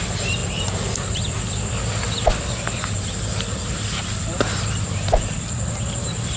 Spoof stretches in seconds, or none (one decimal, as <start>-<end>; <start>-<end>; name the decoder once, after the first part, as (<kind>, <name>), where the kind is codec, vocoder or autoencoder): none